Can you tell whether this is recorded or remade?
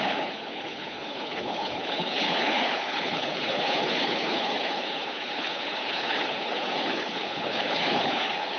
remade